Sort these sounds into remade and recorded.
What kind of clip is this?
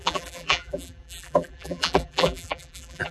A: remade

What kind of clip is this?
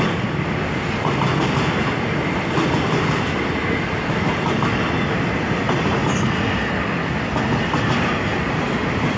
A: recorded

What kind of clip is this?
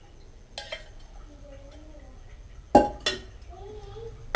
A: recorded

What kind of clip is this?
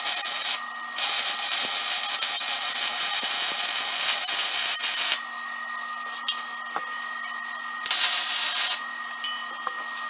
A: recorded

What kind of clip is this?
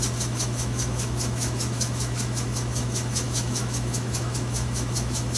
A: remade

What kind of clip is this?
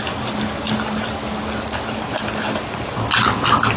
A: recorded